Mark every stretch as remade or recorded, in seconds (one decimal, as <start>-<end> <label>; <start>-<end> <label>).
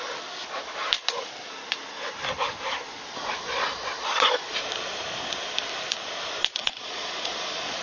0.0-3.5 recorded; 3.5-4.4 remade; 4.4-6.6 recorded; 6.6-7.8 remade